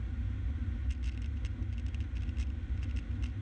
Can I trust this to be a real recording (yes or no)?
yes